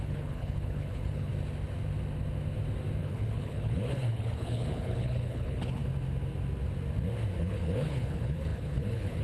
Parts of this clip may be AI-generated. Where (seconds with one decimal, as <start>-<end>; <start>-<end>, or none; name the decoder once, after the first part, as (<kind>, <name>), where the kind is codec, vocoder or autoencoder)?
0.0-1.3 (codec, HILCodec); 3.0-5.8; 7.4-9.2